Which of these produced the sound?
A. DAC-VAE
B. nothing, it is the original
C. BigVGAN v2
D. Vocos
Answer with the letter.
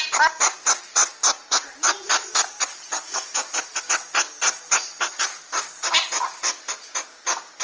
B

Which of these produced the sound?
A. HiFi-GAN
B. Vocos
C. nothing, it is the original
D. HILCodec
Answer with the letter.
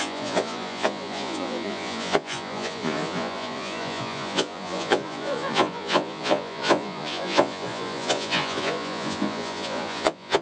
B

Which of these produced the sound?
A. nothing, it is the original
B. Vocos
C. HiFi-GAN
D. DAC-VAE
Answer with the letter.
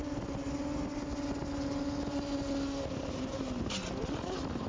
A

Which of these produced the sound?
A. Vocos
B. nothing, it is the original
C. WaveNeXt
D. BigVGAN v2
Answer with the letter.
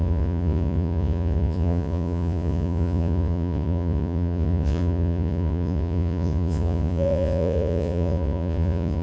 A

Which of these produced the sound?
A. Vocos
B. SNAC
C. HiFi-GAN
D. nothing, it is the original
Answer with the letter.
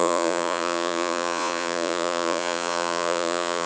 A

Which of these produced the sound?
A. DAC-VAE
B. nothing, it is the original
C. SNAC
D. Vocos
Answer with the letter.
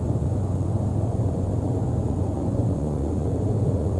D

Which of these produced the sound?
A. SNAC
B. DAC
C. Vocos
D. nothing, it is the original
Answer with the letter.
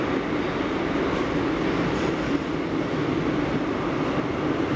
D